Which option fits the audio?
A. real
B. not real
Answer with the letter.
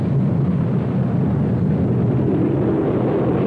A